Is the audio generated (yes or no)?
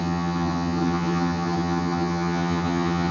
yes